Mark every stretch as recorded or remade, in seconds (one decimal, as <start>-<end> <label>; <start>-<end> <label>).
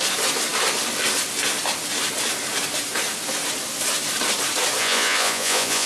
0.0-4.8 recorded; 4.8-5.9 remade